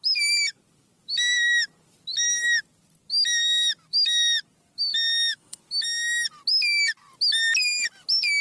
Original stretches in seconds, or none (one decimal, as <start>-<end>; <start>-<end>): 0.0-4.9; 5.6-8.4